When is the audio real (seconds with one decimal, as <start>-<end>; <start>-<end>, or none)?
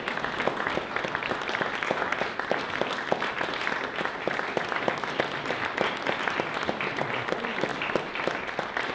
0.0-8.9